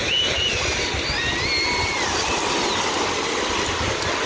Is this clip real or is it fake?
real